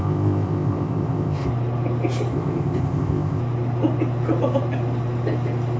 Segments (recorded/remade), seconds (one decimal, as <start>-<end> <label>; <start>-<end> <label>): 0.0-1.5 remade; 1.5-2.3 recorded; 2.3-3.4 remade; 3.4-5.8 recorded